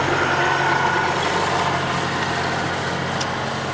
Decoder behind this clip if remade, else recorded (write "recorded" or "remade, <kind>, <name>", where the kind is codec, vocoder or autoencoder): recorded